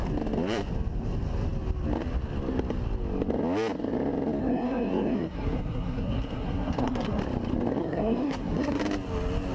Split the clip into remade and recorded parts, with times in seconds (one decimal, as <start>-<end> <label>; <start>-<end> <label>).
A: 0.0-4.4 recorded; 4.4-7.2 remade; 7.2-7.8 recorded; 7.8-8.8 remade; 8.8-9.5 recorded